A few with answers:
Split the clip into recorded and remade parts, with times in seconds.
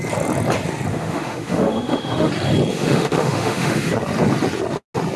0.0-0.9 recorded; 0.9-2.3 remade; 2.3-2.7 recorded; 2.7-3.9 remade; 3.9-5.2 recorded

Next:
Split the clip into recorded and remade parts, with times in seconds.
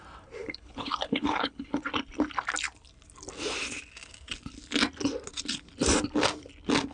0.0-0.4 recorded; 0.4-1.8 remade; 1.8-6.9 recorded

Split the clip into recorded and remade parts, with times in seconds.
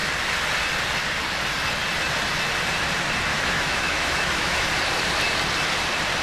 0.0-3.3 recorded; 3.3-4.7 remade; 4.7-6.2 recorded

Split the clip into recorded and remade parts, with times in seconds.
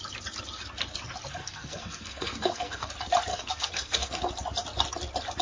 0.0-1.4 recorded; 1.4-2.9 remade; 2.9-3.3 recorded; 3.3-4.2 remade; 4.2-5.4 recorded